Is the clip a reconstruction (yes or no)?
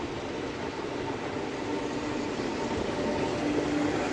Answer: no